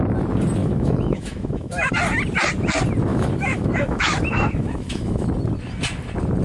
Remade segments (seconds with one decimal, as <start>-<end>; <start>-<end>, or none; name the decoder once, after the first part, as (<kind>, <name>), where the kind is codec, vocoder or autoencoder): 0.6-1.9 (autoencoder, DAC-VAE); 3.1-5.3